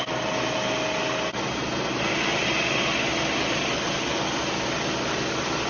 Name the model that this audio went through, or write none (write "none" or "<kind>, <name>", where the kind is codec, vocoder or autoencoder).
none